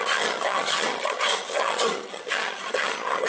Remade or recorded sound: remade